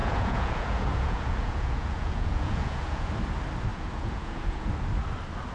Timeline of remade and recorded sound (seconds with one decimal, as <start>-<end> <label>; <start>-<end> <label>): 0.0-3.1 remade; 3.1-3.7 recorded; 3.7-4.7 remade; 4.7-5.5 recorded